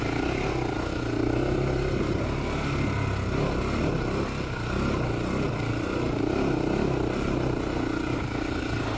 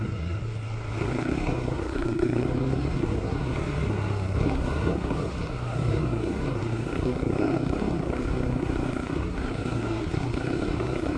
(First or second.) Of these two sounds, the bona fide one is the first